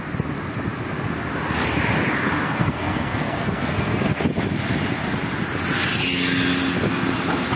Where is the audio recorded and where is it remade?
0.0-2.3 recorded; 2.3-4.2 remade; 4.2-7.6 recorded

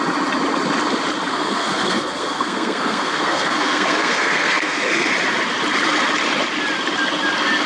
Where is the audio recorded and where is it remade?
0.0-1.3 recorded; 1.3-5.1 remade; 5.1-7.7 recorded

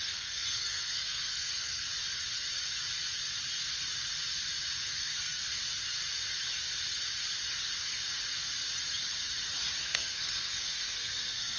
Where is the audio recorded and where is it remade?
0.0-1.9 remade; 1.9-4.9 recorded; 4.9-5.4 remade; 5.4-9.8 recorded; 9.8-11.6 remade

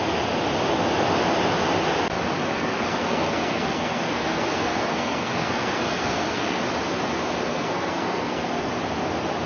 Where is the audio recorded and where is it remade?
0.0-2.5 recorded; 2.5-6.6 remade; 6.6-7.5 recorded; 7.5-8.7 remade; 8.7-9.5 recorded

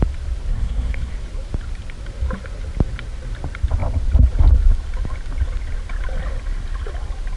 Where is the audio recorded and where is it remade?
0.0-0.5 recorded; 0.5-1.1 remade; 1.1-7.4 recorded

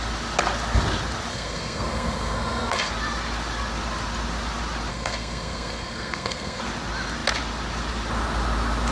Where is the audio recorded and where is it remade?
0.0-1.3 recorded; 1.3-2.9 remade; 2.9-4.9 recorded; 4.9-6.6 remade; 6.6-8.9 recorded